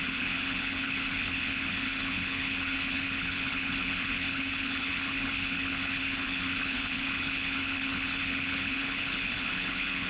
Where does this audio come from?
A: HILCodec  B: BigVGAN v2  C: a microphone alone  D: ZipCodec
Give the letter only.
A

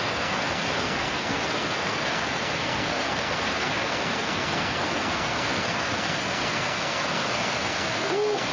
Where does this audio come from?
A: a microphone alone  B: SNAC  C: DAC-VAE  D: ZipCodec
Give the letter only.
B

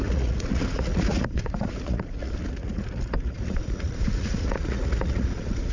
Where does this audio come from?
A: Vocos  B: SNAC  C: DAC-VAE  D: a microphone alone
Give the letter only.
A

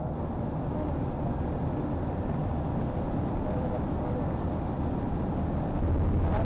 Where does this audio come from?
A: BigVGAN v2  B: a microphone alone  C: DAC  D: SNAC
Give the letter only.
B